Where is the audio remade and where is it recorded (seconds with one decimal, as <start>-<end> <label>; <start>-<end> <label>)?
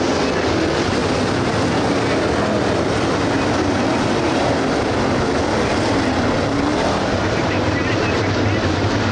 0.0-6.7 recorded; 6.7-8.0 remade; 8.0-9.1 recorded